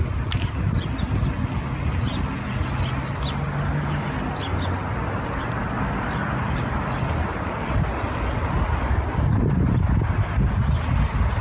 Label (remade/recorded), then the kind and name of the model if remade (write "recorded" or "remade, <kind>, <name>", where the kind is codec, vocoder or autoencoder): recorded